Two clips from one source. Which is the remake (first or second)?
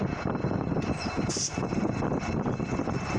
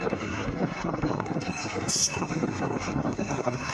second